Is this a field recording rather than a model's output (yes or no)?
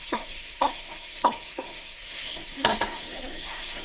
no